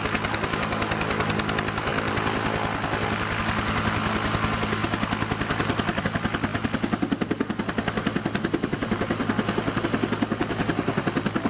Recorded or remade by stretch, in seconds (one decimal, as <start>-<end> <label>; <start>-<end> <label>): 0.0-11.5 recorded